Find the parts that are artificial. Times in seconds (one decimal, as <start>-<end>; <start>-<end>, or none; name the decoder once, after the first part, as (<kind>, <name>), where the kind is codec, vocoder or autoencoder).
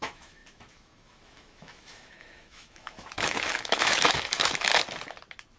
0.0-4.7 (autoencoder, DAC-VAE)